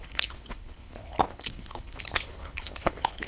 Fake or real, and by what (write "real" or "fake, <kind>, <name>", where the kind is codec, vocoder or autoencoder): fake, codec, HILCodec